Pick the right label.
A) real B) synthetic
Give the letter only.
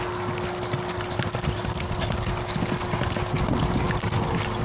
A